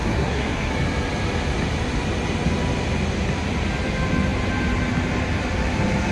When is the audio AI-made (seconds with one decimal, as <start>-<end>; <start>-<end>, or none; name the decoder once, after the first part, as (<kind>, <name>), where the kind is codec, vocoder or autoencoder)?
0.0-0.7 (codec, SNAC)

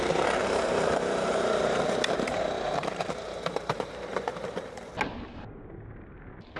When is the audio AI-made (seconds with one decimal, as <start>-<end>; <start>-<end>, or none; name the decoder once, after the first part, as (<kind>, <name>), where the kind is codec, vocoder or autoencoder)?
0.4-1.8 (vocoder, BigVGAN v2); 2.3-4.9